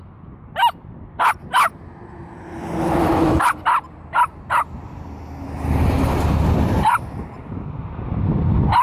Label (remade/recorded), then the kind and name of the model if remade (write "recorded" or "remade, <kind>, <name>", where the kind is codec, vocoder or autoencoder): recorded